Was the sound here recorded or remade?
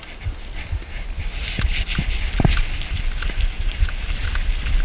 recorded